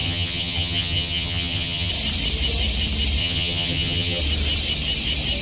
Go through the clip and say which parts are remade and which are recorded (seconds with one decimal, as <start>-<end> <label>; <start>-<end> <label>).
0.0-1.9 remade; 1.9-3.2 recorded; 3.2-4.2 remade; 4.2-5.4 recorded